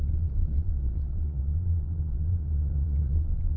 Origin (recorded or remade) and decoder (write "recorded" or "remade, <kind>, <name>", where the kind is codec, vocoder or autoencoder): remade, vocoder, Vocos